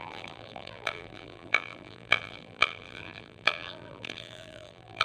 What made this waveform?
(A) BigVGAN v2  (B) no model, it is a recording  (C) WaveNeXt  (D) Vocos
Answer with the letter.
A